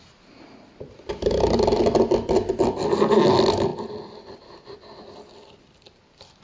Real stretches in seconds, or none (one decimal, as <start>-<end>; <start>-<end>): 0.0-6.4